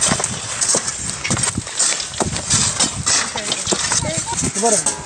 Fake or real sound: real